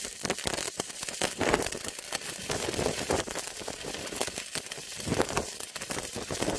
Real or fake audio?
fake